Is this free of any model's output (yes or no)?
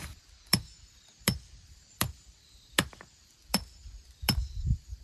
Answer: no